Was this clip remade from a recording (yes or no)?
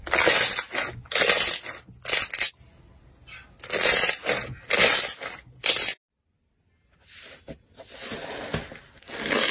no